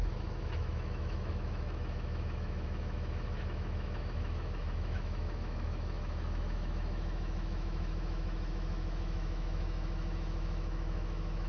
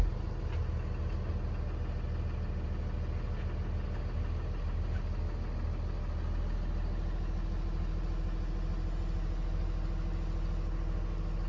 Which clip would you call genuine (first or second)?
second